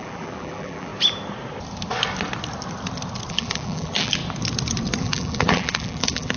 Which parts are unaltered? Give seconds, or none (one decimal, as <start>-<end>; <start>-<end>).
0.9-3.3; 4.2-5.0